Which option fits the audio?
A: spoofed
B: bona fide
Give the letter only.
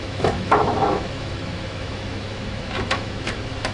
A